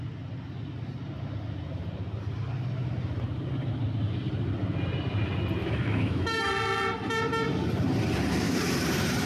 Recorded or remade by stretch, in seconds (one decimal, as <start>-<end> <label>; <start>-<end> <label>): 0.0-5.6 recorded; 5.6-6.5 remade; 6.5-9.3 recorded